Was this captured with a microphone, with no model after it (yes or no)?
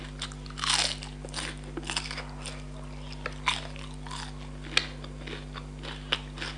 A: yes